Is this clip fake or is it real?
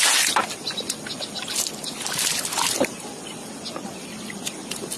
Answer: real